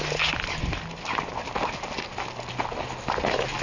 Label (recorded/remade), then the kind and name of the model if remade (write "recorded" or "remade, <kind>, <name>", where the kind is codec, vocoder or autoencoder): recorded